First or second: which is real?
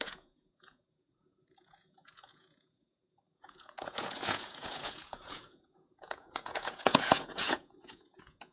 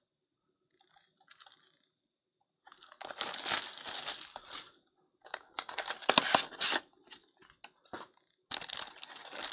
second